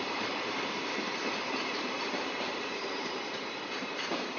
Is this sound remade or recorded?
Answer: remade